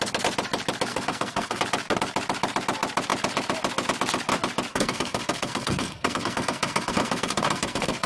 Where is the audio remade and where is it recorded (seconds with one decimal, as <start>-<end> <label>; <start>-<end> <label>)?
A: 0.0-0.9 recorded; 0.9-1.6 remade; 1.6-4.7 recorded; 4.7-8.1 remade